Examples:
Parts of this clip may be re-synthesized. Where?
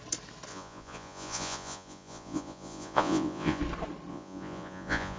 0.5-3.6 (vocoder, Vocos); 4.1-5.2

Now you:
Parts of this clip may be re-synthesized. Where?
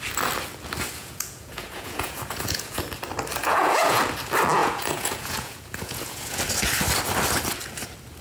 1.0-2.8 (vocoder, Vocos); 3.4-4.0; 4.6-6.4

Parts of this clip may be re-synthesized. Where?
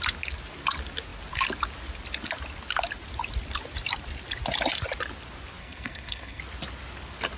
5.6-6.4 (codec, SNAC)